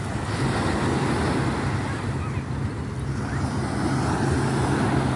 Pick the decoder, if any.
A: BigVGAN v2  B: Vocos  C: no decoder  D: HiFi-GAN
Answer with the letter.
C